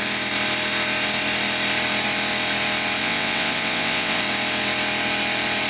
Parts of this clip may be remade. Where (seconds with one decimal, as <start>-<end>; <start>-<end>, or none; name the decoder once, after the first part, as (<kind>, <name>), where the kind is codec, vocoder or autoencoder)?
3.0-4.2 (vocoder, WaveNeXt)